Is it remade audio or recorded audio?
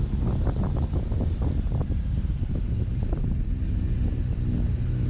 recorded